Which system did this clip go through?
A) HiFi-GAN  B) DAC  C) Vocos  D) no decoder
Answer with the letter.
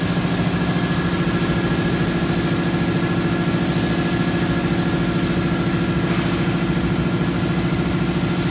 D